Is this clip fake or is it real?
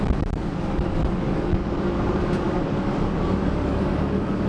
fake